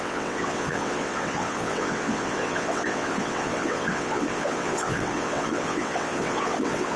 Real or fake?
fake